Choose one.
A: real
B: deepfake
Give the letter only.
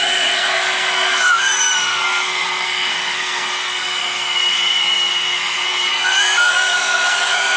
B